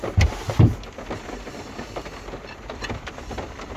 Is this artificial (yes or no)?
no